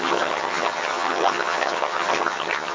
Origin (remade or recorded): remade